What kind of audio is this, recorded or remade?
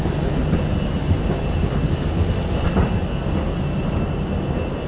recorded